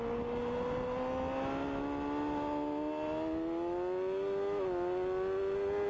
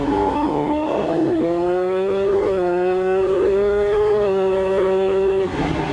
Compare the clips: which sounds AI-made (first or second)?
second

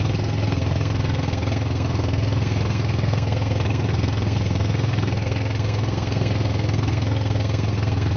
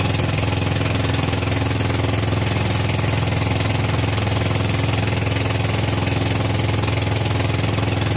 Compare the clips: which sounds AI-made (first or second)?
first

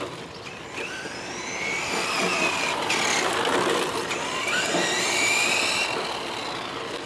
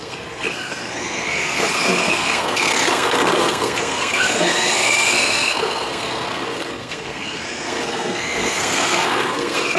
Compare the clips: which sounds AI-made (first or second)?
second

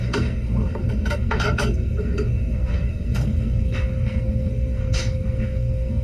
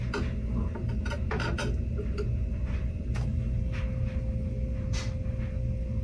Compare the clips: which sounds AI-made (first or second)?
first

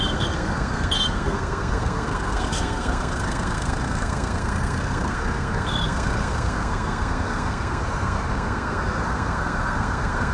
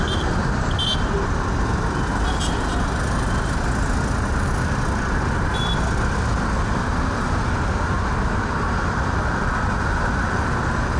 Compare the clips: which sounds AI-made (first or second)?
first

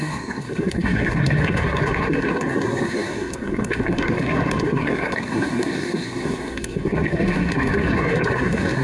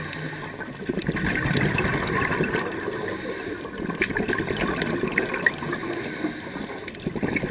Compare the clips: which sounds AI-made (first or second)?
first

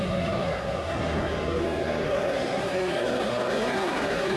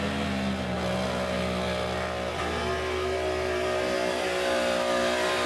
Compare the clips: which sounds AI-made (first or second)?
first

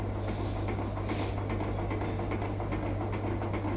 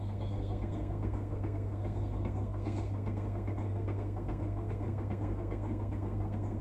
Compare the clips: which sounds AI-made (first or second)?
second